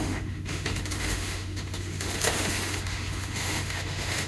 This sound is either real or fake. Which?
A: fake